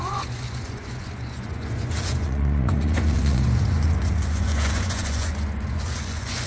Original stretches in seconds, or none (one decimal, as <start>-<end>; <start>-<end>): none

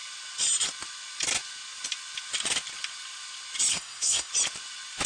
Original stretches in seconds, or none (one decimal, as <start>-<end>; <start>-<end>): 0.0-3.7; 4.3-5.1